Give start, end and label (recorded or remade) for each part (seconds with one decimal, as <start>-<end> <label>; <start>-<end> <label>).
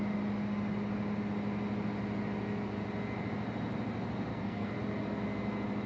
0.0-4.3 recorded; 4.3-4.8 remade; 4.8-5.9 recorded